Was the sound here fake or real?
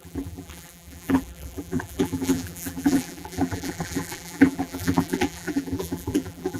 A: fake